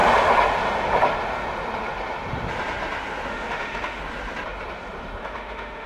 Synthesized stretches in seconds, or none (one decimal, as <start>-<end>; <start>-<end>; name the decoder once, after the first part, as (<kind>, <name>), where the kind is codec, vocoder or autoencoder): 3.3-4.0 (autoencoder, DAC-VAE); 5.2-5.9